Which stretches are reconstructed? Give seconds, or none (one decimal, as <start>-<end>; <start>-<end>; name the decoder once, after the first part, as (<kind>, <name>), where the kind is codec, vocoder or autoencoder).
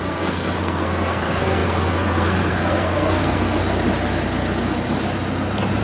0.0-3.6 (codec, SNAC)